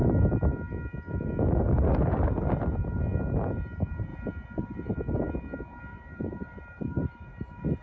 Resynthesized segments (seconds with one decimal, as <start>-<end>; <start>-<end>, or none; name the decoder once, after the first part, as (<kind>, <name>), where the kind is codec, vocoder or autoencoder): 5.9-7.8 (vocoder, BigVGAN v2)